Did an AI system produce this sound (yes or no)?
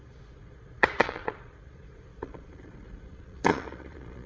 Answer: yes